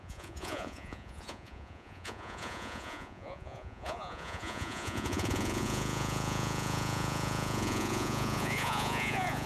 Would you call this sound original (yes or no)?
no